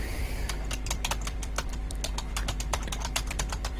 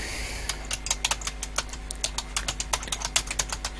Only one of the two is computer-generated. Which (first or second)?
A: first